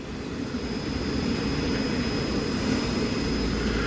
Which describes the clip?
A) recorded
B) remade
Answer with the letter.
A